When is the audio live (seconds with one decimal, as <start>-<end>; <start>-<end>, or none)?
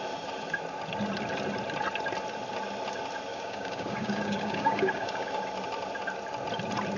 0.0-3.3; 5.4-7.0